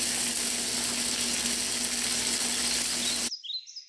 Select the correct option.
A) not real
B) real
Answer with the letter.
B